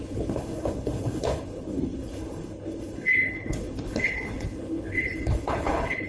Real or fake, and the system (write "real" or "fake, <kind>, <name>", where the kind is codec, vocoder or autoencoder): fake, codec, HILCodec